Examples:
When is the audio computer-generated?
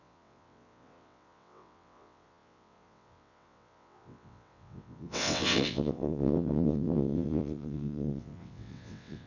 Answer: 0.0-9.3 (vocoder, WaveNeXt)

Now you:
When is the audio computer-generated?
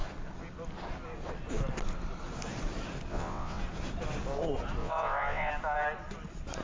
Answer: 3.1-3.6 (vocoder, WaveNeXt); 4.8-5.5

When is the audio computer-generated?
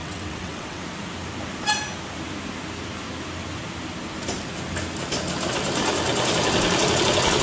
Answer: 0.0-0.8 (vocoder, WaveNeXt)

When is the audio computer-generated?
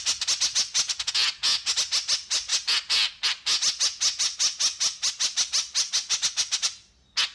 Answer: none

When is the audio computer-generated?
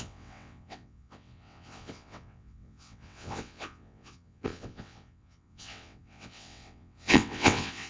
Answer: 0.0-7.9 (vocoder, WaveNeXt)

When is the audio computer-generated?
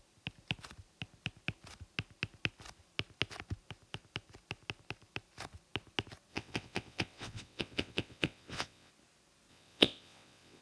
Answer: 6.3-8.9 (vocoder, WaveNeXt); 9.5-10.6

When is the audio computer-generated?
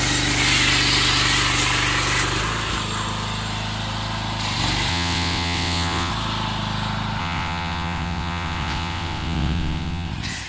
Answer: 4.9-6.1 (vocoder, WaveNeXt); 7.2-10.1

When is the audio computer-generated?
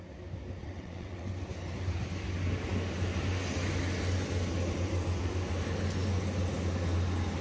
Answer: 0.6-1.3 (vocoder, WaveNeXt)